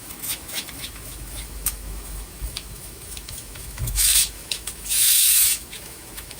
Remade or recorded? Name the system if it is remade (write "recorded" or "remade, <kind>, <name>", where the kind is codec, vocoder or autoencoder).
remade, autoencoder, DAC-VAE